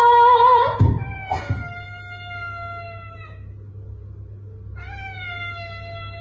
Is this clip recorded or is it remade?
recorded